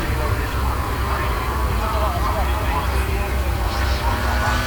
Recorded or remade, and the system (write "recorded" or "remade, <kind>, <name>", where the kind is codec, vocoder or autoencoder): recorded